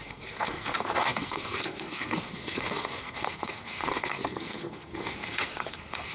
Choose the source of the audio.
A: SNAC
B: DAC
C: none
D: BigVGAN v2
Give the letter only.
A